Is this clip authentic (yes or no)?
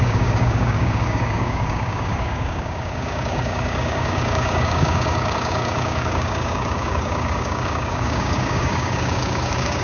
no